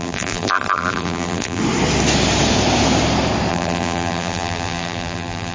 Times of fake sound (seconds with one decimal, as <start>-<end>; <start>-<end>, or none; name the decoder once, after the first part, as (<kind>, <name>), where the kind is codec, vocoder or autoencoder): 0.0-1.6 (vocoder, BigVGAN v2); 3.5-5.5

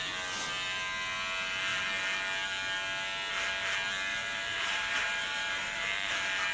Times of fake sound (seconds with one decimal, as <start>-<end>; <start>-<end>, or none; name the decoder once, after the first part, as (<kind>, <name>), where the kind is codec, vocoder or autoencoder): 4.1-6.1 (vocoder, BigVGAN v2)

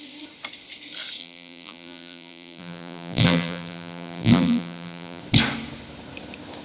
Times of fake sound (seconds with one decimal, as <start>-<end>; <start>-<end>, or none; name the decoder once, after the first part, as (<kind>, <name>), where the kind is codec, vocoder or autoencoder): 1.2-5.2 (vocoder, BigVGAN v2)